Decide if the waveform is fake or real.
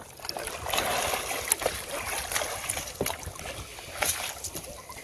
real